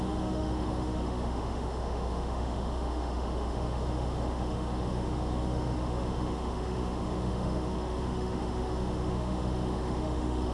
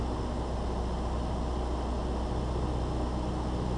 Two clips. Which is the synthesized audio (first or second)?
first